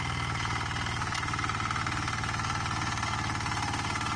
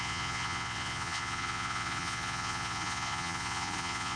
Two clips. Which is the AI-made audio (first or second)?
second